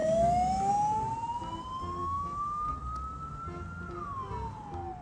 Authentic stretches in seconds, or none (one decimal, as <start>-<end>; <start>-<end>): 0.7-2.0; 2.7-5.0